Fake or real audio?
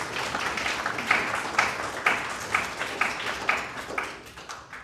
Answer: real